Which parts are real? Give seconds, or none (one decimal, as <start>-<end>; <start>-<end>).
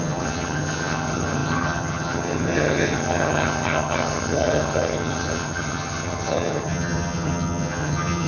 none